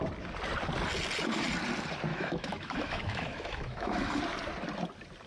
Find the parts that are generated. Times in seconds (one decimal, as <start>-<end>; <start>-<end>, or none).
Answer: 2.1-4.2